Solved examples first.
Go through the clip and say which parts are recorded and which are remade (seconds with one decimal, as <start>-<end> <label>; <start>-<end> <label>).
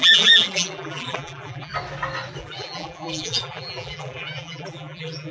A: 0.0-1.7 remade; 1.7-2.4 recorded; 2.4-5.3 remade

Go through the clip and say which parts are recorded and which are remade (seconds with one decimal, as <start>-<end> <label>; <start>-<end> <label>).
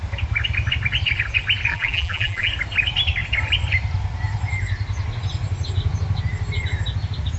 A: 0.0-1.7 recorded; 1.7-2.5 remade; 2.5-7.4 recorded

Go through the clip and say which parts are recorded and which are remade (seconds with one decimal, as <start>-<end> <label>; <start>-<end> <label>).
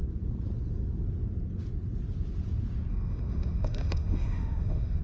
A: 0.0-2.9 recorded; 2.9-5.0 remade